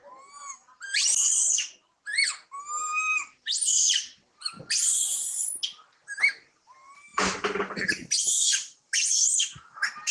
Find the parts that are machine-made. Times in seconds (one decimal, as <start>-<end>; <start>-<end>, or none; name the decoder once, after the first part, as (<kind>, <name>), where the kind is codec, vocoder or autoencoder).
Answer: 3.1-3.8 (vocoder, BigVGAN v2); 7.1-9.1